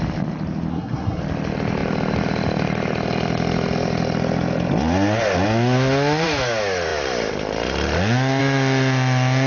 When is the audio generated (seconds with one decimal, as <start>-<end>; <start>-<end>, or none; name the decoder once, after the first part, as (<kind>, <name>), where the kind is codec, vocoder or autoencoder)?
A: 0.7-1.2 (codec, SNAC)